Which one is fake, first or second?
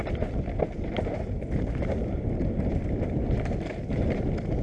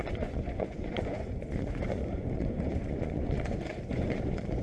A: second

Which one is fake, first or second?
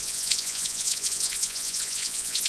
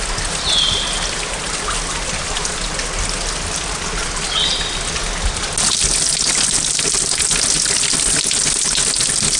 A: first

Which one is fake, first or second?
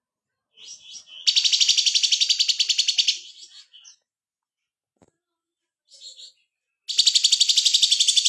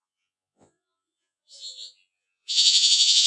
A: second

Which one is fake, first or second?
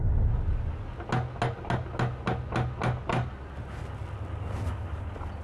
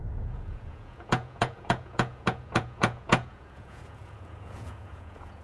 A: second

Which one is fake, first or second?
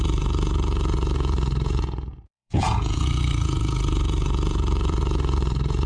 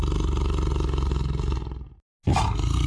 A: first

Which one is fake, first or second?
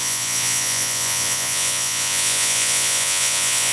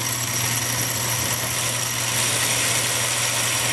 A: first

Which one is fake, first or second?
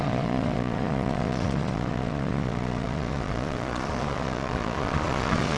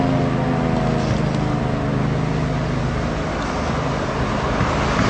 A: first